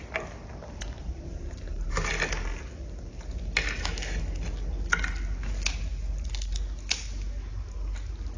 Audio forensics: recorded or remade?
recorded